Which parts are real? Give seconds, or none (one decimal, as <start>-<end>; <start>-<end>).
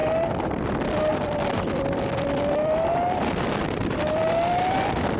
none